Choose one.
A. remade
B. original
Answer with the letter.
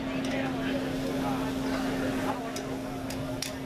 B